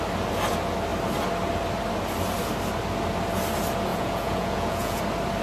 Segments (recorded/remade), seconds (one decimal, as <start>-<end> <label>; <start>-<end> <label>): 0.0-3.9 recorded; 3.9-5.0 remade; 5.0-5.4 recorded